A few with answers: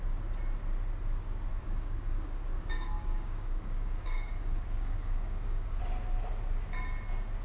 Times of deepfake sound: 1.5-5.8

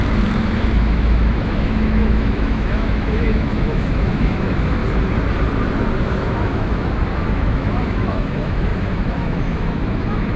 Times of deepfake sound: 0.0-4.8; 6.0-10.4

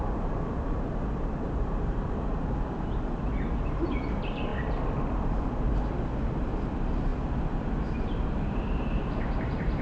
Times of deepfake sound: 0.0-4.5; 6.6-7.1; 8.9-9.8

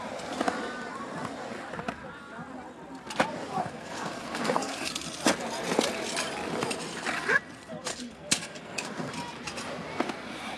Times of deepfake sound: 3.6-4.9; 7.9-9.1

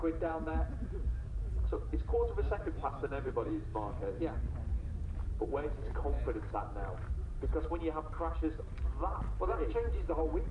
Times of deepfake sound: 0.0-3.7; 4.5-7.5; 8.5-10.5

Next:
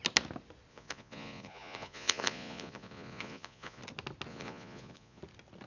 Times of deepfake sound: 0.7-3.8; 4.3-5.2